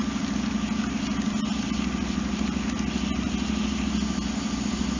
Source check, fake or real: real